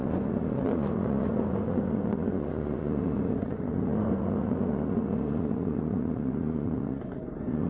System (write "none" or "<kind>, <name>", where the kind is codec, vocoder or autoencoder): vocoder, Vocos